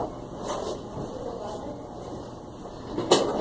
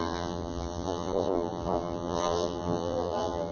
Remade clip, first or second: second